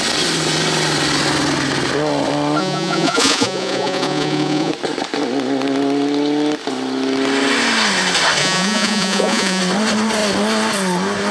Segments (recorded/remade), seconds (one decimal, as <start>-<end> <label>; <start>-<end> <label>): 0.0-2.6 recorded; 2.6-4.7 remade; 4.7-8.4 recorded; 8.4-9.6 remade; 9.6-11.3 recorded